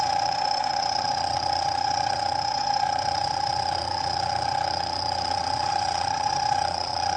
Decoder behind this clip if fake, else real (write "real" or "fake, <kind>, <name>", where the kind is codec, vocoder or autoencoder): fake, vocoder, Vocos